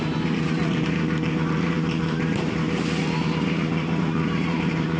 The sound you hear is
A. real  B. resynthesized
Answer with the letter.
B